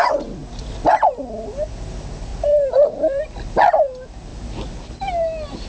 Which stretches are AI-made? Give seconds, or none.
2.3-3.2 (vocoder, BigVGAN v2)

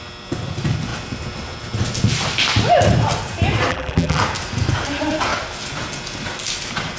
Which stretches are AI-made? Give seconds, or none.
3.7-4.2 (vocoder, BigVGAN v2)

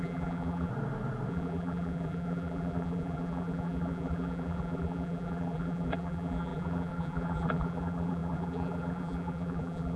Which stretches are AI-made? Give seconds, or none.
0.0-0.7 (vocoder, BigVGAN v2); 1.3-10.0

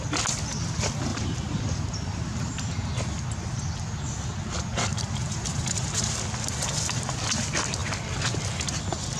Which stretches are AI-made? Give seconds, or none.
1.1-2.7 (vocoder, BigVGAN v2); 4.9-6.2